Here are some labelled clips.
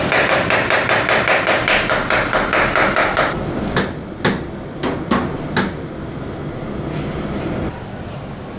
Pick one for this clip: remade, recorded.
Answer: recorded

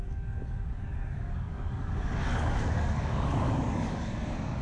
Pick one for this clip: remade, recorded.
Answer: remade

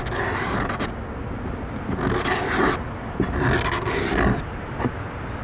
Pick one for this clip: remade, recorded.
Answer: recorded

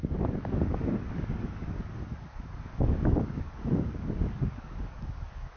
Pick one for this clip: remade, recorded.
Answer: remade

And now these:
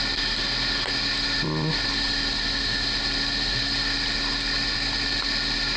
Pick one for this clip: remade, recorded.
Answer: recorded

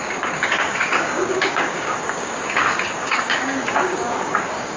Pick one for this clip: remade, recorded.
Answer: remade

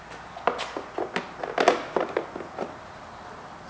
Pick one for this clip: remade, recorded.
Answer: recorded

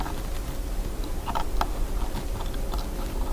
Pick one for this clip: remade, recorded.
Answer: recorded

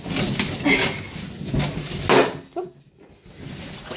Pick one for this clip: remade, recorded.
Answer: recorded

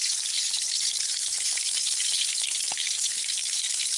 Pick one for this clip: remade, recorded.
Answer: remade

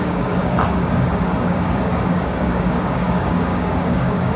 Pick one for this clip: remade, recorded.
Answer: remade